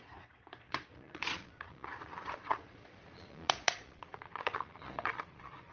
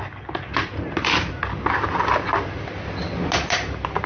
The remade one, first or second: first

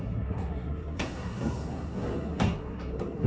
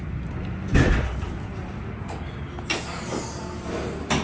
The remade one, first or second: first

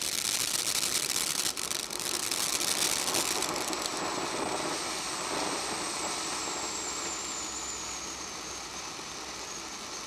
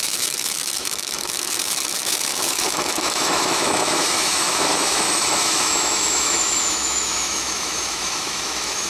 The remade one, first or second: second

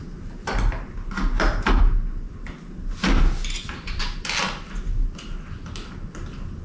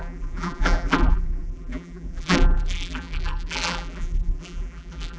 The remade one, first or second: second